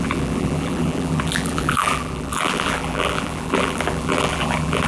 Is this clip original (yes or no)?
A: no